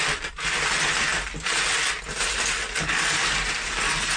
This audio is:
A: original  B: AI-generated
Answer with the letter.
A